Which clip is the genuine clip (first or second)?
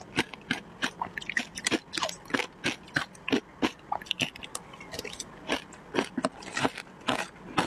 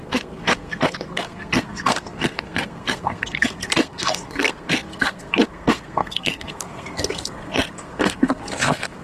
first